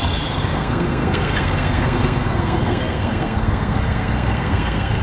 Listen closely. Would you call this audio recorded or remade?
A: remade